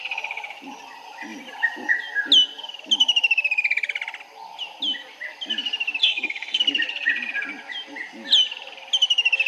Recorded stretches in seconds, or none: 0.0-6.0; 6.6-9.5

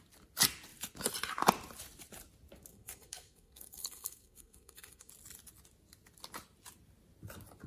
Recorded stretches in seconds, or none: 0.0-2.7; 5.1-7.7

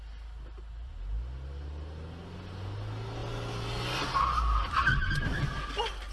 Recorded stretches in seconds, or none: 0.0-6.1

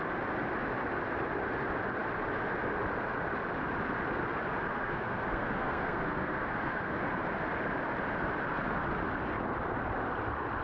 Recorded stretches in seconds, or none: 0.0-4.7; 7.0-10.6

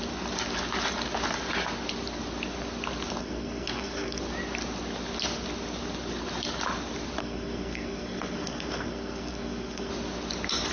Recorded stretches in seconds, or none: 0.0-3.2; 4.2-7.2; 9.9-10.7